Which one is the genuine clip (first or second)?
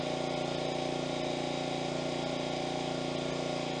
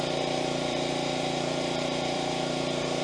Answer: first